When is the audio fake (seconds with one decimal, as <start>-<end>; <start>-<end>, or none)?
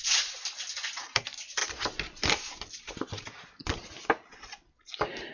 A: none